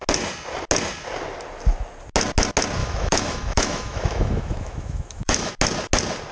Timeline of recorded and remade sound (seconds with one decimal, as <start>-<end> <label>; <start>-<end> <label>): 0.0-2.8 recorded; 2.8-5.5 remade; 5.5-6.3 recorded